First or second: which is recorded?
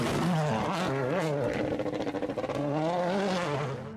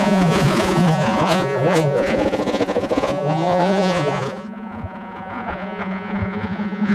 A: first